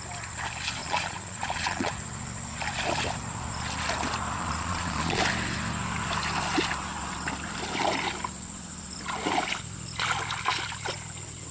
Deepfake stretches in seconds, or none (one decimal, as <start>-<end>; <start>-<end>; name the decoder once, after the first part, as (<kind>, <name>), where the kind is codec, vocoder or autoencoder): 0.8-1.9 (vocoder, Vocos); 4.4-5.2